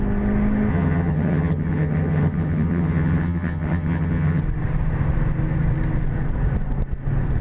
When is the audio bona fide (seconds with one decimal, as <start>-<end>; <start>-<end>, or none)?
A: 0.0-0.7; 4.4-7.4